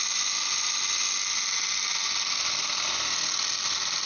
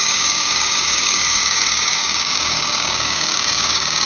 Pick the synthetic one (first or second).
second